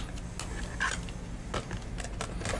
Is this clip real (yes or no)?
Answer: yes